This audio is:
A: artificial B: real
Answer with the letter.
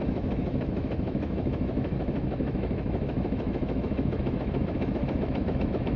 A